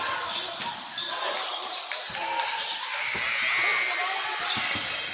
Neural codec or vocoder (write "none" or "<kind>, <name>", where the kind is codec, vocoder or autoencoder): none